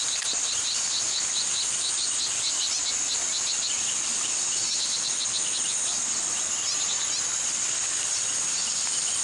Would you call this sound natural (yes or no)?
yes